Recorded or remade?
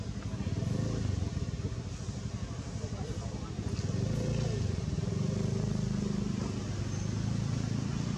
recorded